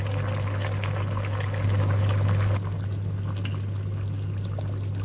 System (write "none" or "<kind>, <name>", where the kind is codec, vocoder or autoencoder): none